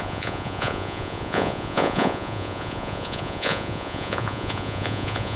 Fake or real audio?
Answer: fake